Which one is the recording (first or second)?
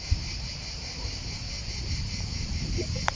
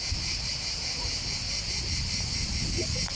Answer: second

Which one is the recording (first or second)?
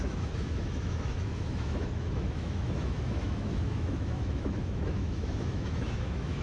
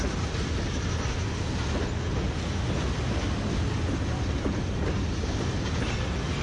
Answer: second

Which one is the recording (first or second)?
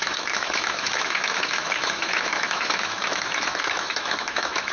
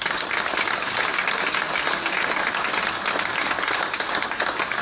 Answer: second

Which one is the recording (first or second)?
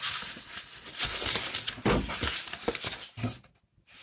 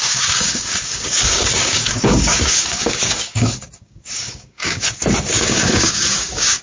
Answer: first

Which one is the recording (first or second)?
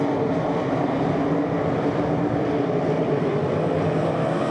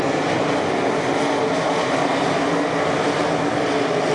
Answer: second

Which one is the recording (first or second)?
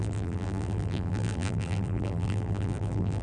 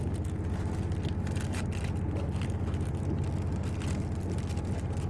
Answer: second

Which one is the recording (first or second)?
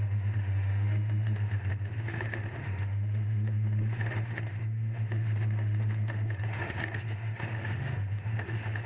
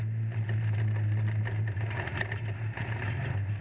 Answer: second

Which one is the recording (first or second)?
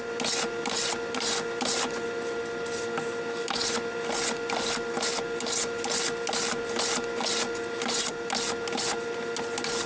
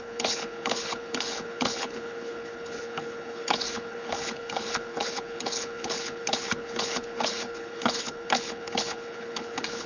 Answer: first